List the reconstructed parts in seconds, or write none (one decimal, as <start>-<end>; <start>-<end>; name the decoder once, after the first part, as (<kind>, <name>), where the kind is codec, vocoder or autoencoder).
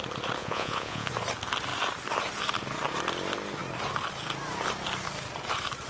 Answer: 0.4-1.1 (vocoder, Vocos)